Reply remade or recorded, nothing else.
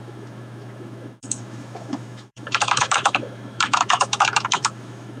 remade